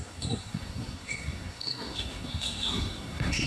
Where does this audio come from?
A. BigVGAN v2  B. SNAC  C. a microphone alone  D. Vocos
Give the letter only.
B